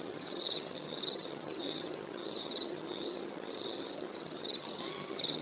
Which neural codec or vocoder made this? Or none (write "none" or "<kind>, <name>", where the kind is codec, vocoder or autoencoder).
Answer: vocoder, HiFi-GAN